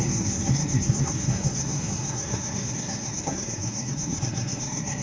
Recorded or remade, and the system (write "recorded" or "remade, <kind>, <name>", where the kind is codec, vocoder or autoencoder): remade, codec, SNAC